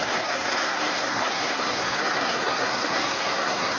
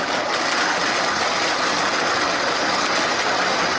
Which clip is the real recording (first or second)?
second